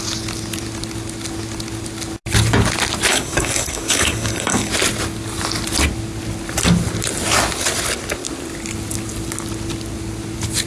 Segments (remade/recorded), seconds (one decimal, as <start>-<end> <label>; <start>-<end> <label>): 0.0-3.1 recorded; 3.1-4.7 remade; 4.7-10.7 recorded